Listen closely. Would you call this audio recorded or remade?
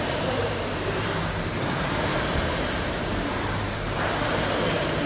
remade